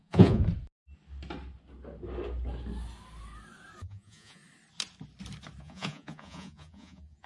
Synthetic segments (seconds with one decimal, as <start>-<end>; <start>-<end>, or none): 0.0-0.4; 3.8-4.4; 5.6-7.3